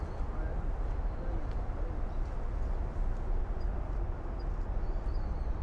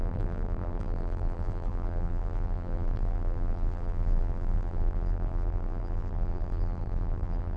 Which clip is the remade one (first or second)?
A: second